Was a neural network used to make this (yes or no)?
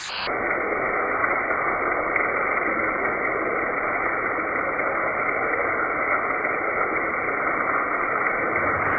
no